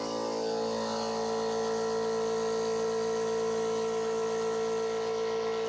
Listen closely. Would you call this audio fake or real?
real